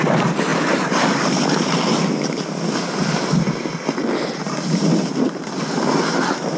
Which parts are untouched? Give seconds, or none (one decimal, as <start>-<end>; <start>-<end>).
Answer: 0.0-0.5; 1.2-6.6